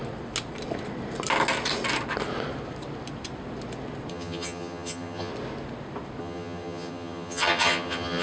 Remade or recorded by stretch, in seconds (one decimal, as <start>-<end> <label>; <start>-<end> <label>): 0.0-4.1 recorded; 4.1-5.3 remade; 5.3-6.2 recorded; 6.2-8.2 remade